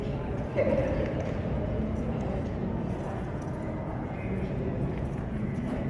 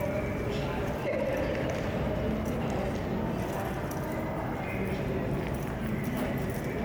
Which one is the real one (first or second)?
second